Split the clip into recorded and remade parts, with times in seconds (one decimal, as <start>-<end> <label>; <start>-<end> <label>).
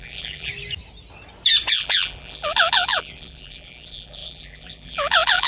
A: 0.0-0.5 remade; 0.5-1.7 recorded; 1.7-5.5 remade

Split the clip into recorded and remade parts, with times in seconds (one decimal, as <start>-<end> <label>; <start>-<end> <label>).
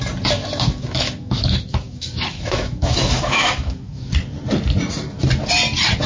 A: 0.0-0.4 recorded; 0.4-4.1 remade; 4.1-6.1 recorded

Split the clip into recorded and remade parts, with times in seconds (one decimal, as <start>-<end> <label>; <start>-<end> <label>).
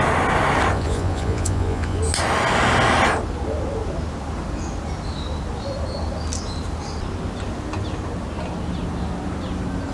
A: 0.0-0.7 recorded; 0.7-2.0 remade; 2.0-9.9 recorded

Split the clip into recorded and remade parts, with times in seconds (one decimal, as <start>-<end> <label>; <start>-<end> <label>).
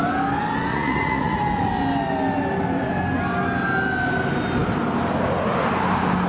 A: 0.0-0.7 recorded; 0.7-1.4 remade; 1.4-6.3 recorded